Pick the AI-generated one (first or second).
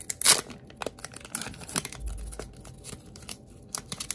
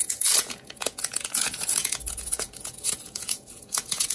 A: second